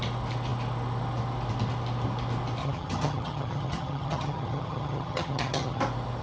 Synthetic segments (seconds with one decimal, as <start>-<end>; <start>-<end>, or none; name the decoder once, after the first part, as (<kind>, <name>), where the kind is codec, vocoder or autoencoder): 2.6-5.8 (vocoder, HiFi-GAN)